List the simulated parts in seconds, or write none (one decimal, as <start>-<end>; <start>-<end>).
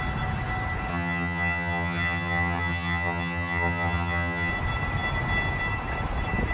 0.9-4.5